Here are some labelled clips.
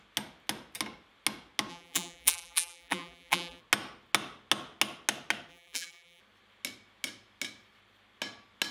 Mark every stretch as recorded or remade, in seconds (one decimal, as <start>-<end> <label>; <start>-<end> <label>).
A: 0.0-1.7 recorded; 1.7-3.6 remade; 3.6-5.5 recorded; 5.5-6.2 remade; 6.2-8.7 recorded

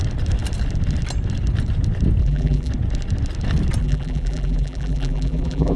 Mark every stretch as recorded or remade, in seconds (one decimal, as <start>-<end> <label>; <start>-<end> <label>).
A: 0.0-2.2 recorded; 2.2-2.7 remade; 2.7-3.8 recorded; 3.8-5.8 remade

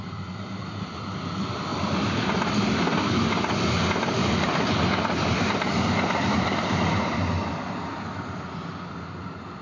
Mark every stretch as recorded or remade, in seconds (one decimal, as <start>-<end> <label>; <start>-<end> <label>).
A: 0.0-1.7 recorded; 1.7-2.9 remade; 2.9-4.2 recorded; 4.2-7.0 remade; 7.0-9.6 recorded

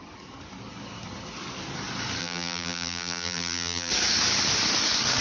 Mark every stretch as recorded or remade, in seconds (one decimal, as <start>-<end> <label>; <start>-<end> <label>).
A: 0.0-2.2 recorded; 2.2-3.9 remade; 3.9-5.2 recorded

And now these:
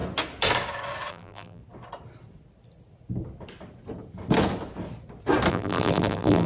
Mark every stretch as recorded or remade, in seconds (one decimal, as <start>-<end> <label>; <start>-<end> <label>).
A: 0.0-1.1 recorded; 1.1-1.6 remade; 1.6-5.5 recorded; 5.5-6.5 remade